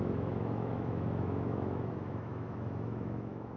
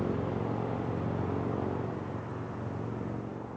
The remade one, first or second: first